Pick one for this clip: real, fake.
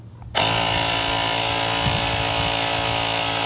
real